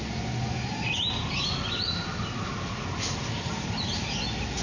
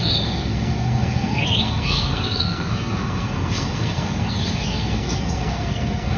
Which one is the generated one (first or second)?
second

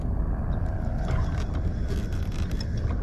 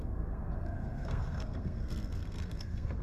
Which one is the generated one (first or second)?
second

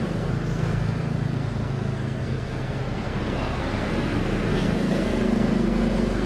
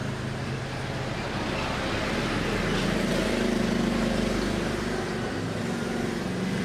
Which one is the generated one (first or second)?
first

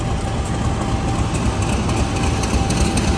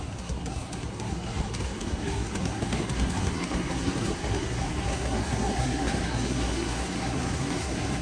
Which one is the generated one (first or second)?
second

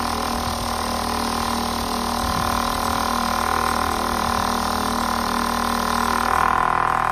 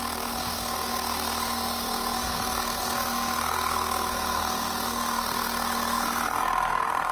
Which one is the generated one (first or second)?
second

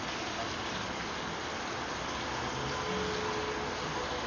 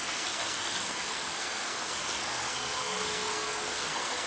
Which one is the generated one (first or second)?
second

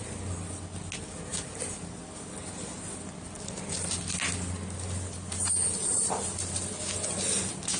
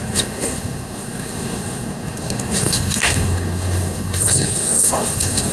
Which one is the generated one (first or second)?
second